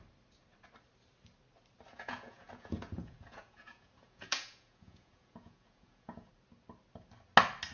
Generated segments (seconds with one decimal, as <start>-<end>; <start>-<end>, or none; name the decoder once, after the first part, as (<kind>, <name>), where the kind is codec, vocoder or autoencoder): 1.9-6.3 (vocoder, Vocos)